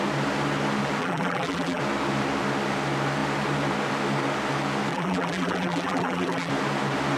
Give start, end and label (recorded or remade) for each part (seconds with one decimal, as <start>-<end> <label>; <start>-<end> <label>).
0.0-1.0 recorded; 1.0-1.8 remade; 1.8-4.9 recorded; 4.9-6.5 remade; 6.5-7.2 recorded